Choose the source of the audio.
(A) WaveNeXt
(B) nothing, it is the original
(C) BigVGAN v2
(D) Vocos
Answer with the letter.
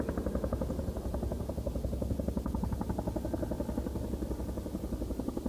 B